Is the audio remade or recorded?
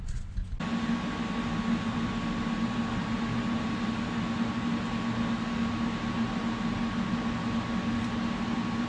recorded